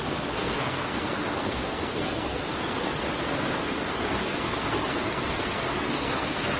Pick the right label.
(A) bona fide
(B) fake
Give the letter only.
B